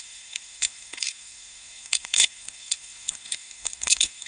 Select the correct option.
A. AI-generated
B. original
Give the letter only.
A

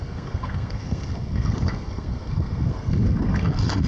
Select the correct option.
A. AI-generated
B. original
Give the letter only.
A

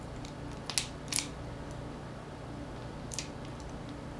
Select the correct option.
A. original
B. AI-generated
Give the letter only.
A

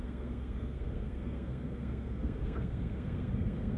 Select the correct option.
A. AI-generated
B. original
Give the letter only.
A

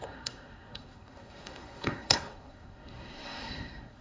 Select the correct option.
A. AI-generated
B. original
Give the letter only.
A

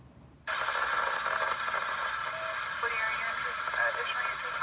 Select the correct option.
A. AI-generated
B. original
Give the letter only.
B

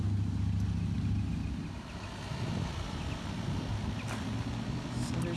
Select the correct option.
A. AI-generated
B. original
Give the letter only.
B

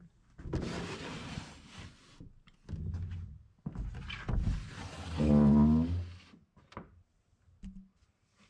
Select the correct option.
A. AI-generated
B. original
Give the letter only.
B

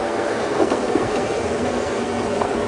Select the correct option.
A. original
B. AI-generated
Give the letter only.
B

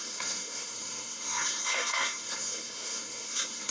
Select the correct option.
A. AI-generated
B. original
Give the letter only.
A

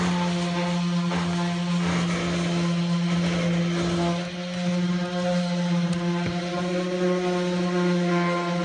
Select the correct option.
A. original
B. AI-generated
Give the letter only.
A